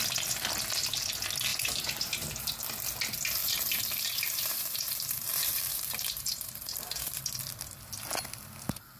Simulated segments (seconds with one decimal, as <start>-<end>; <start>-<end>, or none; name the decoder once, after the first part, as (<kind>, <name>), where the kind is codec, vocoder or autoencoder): 1.5-2.5 (vocoder, BigVGAN v2); 3.4-7.2